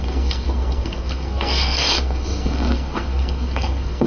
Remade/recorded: remade